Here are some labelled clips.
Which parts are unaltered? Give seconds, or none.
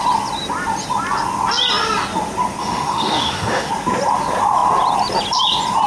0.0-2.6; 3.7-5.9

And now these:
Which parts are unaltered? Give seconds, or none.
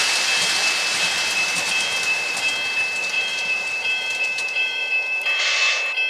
0.0-0.9; 2.5-3.0; 5.2-6.1